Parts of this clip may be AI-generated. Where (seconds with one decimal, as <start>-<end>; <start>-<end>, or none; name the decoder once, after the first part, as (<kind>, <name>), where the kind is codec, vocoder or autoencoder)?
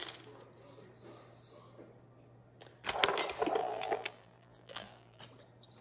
3.6-5.2 (vocoder, BigVGAN v2)